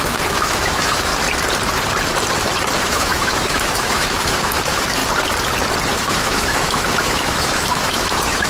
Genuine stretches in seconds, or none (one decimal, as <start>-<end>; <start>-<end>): 1.1-2.8; 5.0-5.9